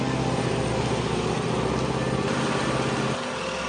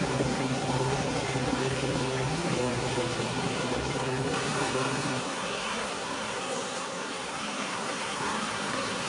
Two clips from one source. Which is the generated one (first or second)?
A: second